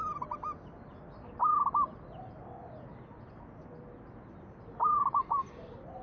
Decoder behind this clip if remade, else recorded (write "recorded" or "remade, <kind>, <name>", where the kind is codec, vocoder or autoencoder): recorded